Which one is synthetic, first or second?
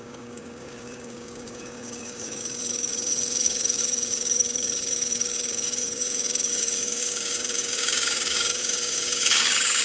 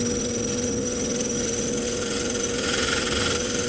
first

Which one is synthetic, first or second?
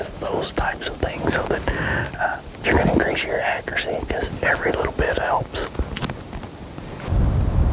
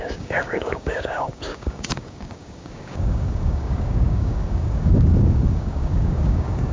second